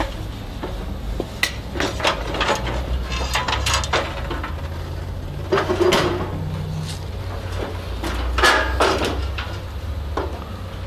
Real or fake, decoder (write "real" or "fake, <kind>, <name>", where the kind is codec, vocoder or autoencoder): real